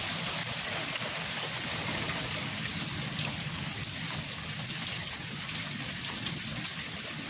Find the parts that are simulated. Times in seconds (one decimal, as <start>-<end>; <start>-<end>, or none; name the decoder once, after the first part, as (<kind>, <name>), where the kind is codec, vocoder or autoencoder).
none